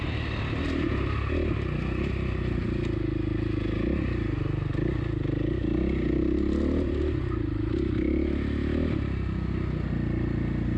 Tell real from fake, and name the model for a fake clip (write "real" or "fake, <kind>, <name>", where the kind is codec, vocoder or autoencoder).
real